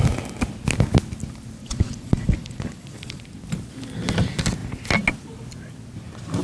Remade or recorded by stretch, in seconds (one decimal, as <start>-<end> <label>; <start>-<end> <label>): 0.0-1.6 recorded; 1.6-3.2 remade; 3.2-6.4 recorded